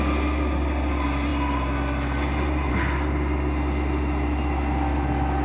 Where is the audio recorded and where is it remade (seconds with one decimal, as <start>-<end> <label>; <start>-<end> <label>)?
0.0-5.4 recorded